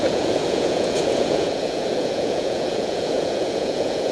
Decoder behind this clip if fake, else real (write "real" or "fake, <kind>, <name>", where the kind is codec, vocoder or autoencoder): fake, vocoder, Vocos